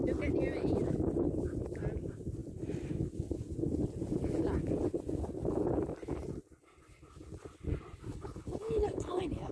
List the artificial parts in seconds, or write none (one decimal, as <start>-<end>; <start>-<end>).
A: 8.1-9.5